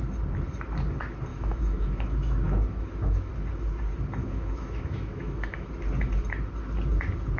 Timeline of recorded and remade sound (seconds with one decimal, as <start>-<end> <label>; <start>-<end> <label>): 0.0-1.3 recorded; 1.3-3.3 remade; 3.3-4.2 recorded; 4.2-5.7 remade; 5.7-7.4 recorded